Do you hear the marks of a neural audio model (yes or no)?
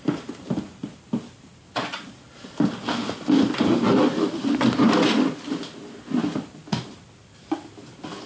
no